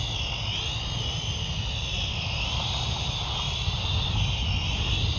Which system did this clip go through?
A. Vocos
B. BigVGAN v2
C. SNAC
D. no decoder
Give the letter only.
D